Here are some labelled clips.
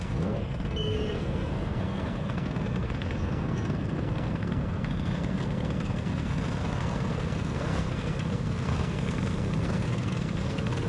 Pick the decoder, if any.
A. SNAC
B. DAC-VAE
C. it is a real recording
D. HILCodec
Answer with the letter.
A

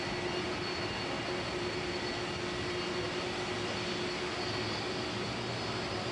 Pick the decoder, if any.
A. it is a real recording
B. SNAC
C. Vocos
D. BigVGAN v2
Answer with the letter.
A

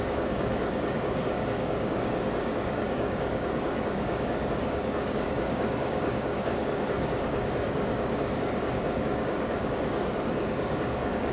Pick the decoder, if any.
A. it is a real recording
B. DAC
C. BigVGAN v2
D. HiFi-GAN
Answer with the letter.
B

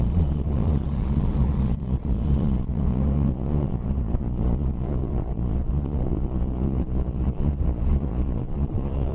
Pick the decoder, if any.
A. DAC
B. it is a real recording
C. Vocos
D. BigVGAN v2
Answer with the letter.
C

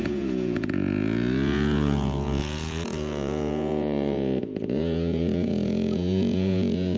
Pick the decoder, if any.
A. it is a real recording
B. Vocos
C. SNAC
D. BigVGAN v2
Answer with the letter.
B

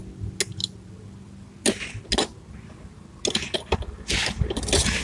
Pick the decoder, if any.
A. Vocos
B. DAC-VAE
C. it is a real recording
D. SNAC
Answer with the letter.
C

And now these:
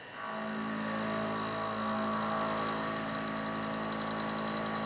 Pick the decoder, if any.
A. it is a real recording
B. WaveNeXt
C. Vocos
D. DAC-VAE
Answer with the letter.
A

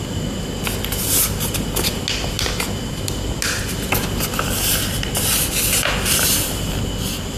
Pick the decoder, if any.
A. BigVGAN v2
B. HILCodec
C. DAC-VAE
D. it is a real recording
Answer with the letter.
D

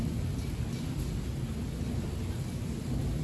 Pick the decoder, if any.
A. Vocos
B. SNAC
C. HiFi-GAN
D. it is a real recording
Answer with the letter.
D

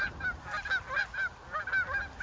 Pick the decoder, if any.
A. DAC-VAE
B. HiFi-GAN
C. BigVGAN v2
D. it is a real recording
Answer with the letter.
D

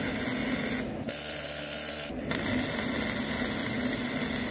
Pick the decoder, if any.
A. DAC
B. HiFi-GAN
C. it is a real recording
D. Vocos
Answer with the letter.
C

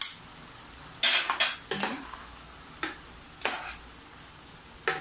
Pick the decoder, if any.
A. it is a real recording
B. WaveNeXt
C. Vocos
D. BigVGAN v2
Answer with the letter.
A